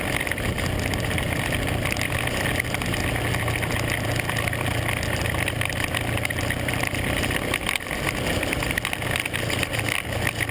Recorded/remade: recorded